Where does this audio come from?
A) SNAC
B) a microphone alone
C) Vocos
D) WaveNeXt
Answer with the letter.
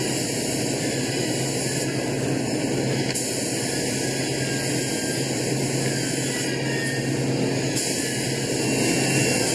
B